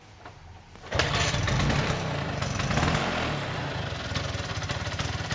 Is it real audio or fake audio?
real